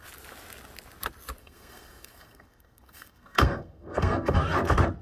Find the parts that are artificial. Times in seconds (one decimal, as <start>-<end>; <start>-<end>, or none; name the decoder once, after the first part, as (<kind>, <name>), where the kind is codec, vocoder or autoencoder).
1.4-4.4 (codec, SNAC)